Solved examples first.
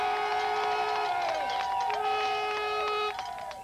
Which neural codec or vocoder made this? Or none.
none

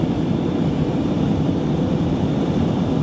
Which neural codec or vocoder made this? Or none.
vocoder, BigVGAN v2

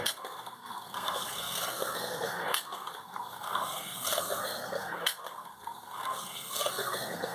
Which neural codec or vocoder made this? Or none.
codec, SNAC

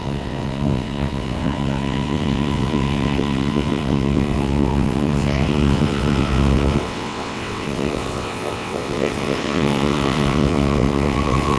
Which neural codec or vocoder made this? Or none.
vocoder, WaveNeXt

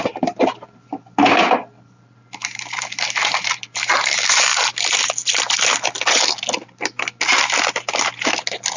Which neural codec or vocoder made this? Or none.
none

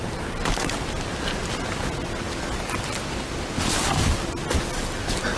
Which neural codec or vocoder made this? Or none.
none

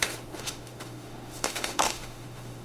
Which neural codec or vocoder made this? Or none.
autoencoder, DAC-VAE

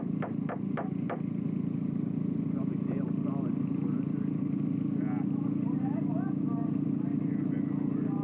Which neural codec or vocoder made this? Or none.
none